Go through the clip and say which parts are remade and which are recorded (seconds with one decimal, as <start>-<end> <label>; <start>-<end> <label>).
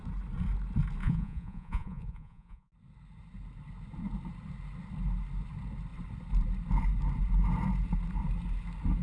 0.0-1.0 recorded; 1.0-2.7 remade; 2.7-9.0 recorded